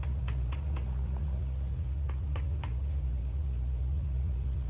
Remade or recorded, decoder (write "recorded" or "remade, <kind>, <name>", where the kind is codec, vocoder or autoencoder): remade, vocoder, Vocos